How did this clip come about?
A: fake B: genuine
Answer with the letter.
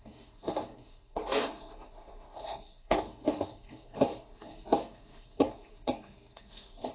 A